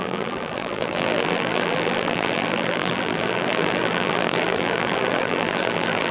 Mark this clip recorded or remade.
remade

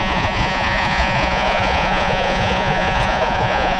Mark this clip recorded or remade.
remade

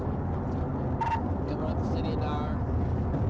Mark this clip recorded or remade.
recorded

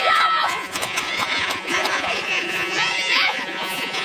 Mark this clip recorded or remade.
remade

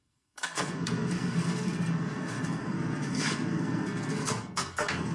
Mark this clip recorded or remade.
remade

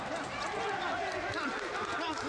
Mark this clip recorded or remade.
recorded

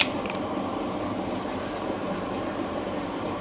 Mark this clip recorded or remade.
remade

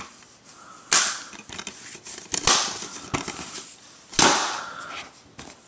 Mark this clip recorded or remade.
recorded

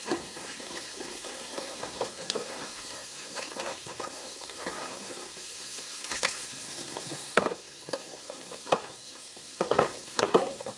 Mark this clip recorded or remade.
remade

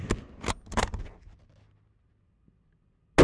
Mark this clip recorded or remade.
recorded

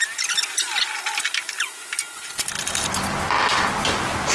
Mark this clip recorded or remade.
recorded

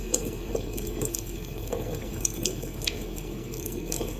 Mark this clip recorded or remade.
remade